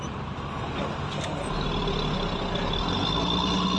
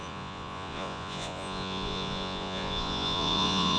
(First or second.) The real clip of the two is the first